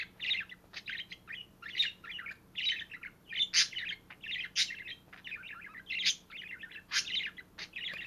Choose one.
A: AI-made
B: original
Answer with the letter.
B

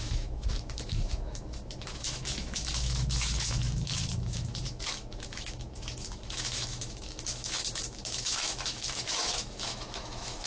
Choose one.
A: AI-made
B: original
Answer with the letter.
A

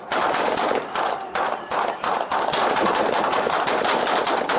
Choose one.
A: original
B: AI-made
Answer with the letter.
A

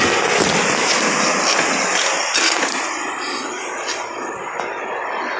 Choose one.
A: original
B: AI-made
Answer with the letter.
A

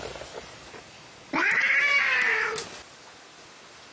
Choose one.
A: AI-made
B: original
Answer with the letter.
B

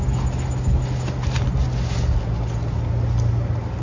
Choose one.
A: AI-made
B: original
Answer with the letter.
B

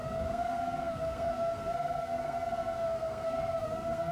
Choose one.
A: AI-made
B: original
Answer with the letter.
A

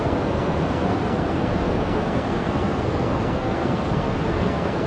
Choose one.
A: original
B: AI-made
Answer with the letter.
B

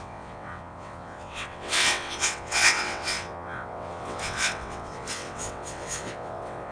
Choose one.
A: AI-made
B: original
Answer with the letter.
A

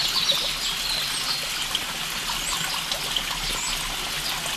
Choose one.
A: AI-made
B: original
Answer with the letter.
B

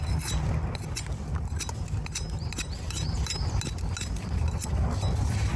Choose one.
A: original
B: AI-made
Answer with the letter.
A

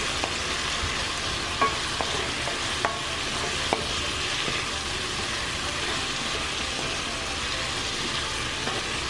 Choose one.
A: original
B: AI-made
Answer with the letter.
A